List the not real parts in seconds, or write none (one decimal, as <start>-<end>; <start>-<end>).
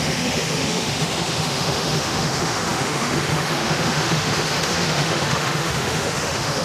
0.0-6.6